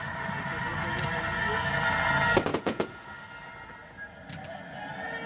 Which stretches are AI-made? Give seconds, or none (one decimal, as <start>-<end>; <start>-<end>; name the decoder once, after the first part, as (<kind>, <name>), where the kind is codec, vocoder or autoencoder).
2.5-3.1 (vocoder, Vocos)